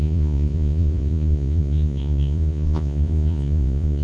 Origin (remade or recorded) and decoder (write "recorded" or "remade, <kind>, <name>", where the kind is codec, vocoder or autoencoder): remade, vocoder, Vocos